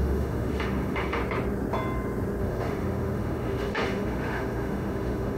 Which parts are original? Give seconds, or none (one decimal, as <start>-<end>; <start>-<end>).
1.2-2.4